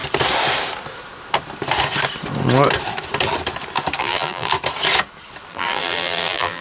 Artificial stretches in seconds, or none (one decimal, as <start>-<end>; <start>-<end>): 4.0-4.5; 5.5-6.6